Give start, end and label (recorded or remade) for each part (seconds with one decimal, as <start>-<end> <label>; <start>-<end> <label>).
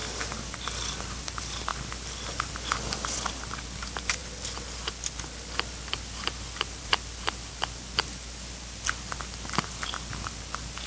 0.0-10.9 recorded